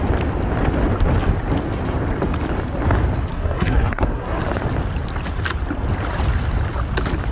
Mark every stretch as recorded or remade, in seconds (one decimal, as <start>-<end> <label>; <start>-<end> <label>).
0.0-3.3 recorded; 3.3-4.4 remade; 4.4-7.3 recorded